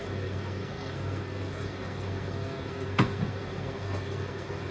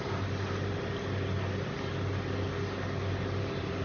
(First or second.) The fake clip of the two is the first